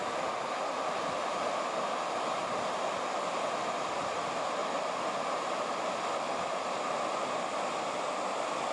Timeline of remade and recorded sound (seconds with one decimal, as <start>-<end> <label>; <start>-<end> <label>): 0.0-8.7 recorded